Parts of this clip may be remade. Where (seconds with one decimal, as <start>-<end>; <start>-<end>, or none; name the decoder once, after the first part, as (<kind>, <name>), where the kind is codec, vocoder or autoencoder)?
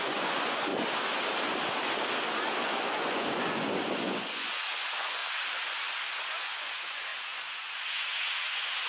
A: 0.0-0.7 (vocoder, Vocos); 2.6-5.2; 6.3-8.9